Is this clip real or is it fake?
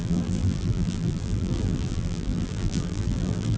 fake